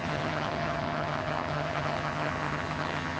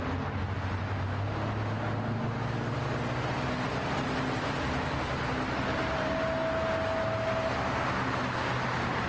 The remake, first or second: first